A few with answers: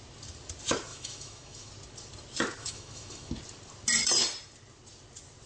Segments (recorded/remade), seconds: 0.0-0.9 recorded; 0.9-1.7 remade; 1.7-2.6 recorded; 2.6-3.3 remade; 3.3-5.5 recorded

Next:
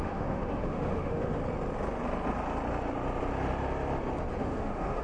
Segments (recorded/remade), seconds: 0.0-1.4 remade; 1.4-4.4 recorded; 4.4-5.0 remade

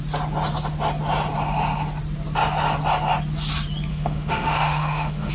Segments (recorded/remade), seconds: 0.0-3.9 recorded; 3.9-5.3 remade

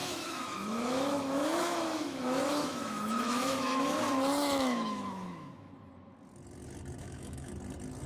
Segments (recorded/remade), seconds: 0.0-4.0 remade; 4.0-4.4 recorded; 4.4-5.7 remade; 5.7-7.0 recorded; 7.0-7.5 remade; 7.5-8.1 recorded